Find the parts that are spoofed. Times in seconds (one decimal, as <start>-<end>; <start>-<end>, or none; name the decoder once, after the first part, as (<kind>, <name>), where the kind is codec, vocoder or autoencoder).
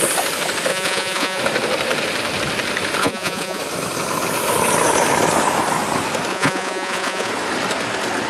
0.7-1.4 (vocoder, Vocos); 3.0-3.6; 6.3-7.3